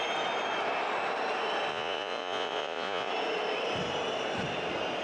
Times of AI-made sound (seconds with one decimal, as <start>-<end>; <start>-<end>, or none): 1.7-3.1